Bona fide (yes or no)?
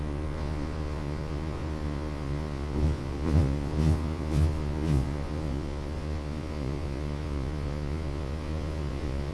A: no